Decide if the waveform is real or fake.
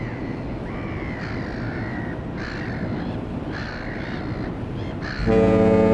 real